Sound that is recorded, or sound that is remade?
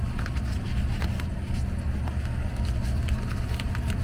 recorded